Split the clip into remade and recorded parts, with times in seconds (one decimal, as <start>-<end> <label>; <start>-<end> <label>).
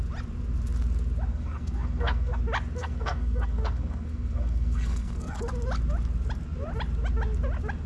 0.0-1.3 recorded; 1.3-2.4 remade; 2.4-2.8 recorded; 2.8-5.5 remade; 5.5-7.9 recorded